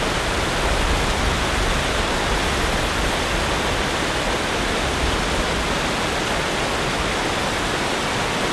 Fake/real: real